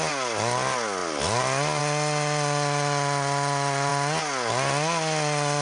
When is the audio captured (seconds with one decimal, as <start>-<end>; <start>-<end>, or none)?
0.0-5.6